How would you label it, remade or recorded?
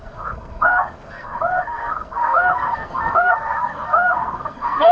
remade